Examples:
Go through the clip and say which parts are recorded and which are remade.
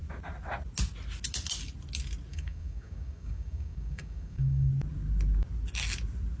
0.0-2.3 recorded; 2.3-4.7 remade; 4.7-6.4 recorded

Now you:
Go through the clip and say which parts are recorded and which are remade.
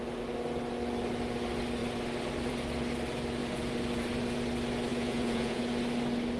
0.0-4.9 recorded; 4.9-5.6 remade; 5.6-6.4 recorded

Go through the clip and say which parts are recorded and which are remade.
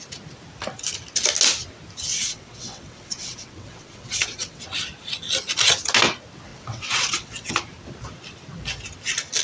0.0-2.1 recorded; 2.1-4.6 remade; 4.6-6.5 recorded; 6.5-7.5 remade; 7.5-9.4 recorded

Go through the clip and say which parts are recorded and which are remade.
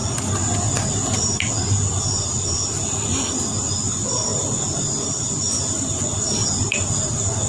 0.0-6.4 recorded; 6.4-6.9 remade; 6.9-7.5 recorded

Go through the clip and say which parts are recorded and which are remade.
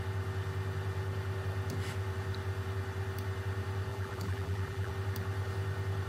0.0-3.9 recorded; 3.9-4.9 remade; 4.9-6.1 recorded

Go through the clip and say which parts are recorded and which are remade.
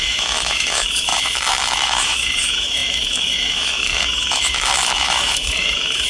0.0-6.1 remade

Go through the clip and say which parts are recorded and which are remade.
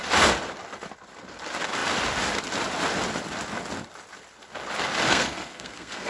0.0-5.1 recorded; 5.1-6.1 remade